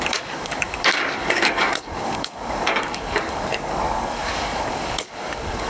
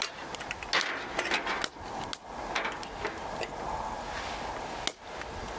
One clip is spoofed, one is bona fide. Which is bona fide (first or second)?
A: second